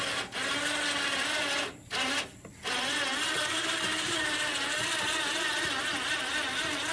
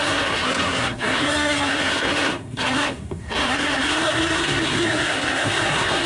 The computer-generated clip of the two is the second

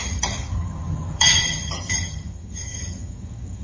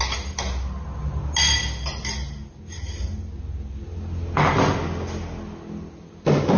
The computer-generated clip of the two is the first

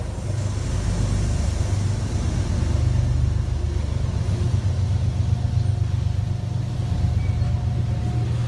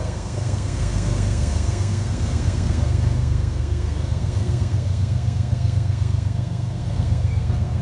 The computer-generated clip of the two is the second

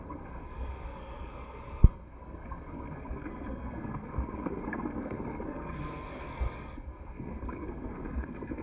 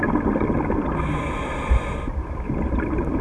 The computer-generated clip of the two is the first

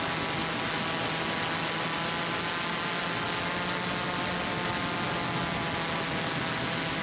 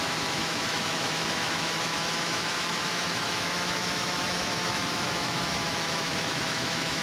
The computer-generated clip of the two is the second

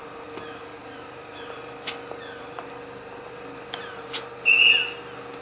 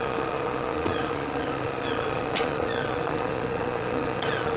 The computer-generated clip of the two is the second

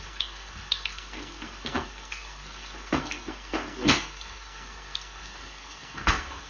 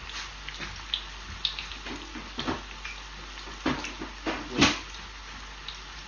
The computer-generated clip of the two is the first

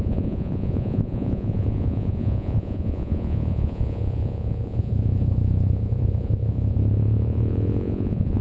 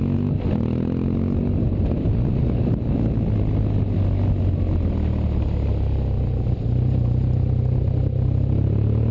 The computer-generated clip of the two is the first